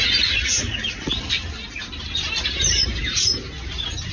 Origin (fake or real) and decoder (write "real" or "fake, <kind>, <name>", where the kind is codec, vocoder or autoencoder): real